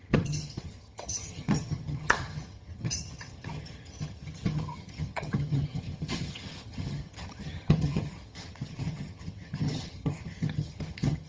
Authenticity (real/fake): fake